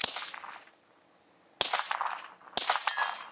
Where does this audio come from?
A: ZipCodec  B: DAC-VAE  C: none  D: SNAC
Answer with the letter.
C